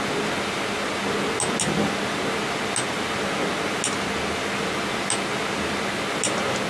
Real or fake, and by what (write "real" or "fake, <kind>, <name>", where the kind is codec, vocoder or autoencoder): real